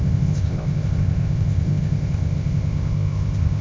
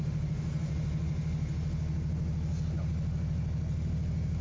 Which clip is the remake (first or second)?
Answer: first